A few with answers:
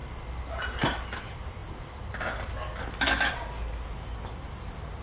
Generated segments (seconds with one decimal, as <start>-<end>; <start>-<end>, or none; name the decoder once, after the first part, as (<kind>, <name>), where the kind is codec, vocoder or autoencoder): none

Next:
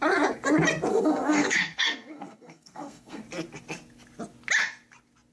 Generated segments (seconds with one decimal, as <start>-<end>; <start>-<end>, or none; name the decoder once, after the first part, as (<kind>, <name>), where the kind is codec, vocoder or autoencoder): 0.9-3.2 (codec, SNAC)

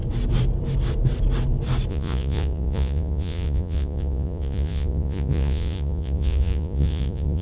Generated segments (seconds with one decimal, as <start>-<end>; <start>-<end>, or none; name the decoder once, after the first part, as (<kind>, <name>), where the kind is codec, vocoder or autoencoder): 1.9-7.4 (vocoder, Vocos)

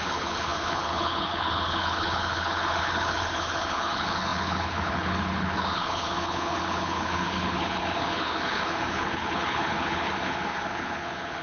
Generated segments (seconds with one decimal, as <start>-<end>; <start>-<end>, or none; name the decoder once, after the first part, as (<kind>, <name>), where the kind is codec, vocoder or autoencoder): 0.0-11.4 (codec, HILCodec)

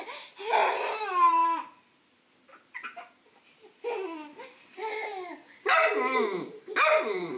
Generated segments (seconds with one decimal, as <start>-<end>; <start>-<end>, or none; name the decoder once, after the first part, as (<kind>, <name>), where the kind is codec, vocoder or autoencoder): none